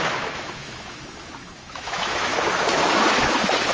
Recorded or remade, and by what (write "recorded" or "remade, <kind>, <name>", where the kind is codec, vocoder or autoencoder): remade, autoencoder, DAC-VAE